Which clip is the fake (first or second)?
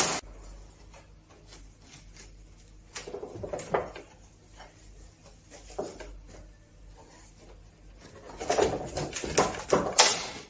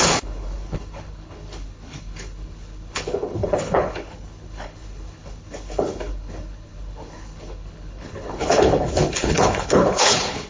second